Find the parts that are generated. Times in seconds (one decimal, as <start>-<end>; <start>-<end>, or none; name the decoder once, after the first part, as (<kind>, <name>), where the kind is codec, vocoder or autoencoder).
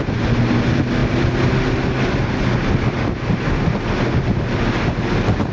none